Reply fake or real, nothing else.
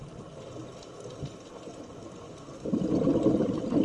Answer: real